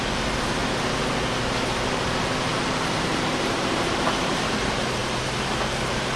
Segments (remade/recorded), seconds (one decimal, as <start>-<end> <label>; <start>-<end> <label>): 0.0-0.6 remade; 0.6-1.9 recorded; 1.9-6.2 remade